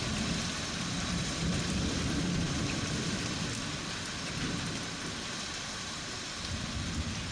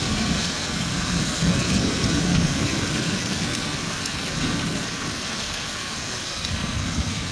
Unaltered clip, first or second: first